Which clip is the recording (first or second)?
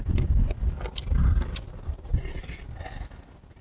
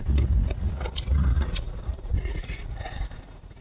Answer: first